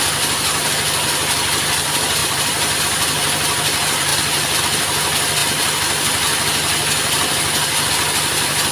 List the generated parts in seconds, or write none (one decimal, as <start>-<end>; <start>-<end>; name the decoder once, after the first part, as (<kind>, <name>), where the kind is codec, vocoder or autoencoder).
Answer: 2.2-2.8 (vocoder, BigVGAN v2)